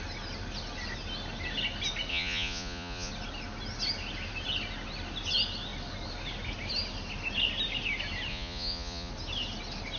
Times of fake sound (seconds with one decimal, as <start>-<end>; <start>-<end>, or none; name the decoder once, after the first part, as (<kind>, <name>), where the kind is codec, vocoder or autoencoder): 2.1-3.1 (vocoder, Vocos); 8.3-9.1